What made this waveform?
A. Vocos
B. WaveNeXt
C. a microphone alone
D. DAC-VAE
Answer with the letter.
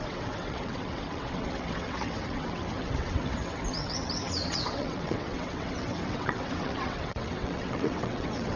B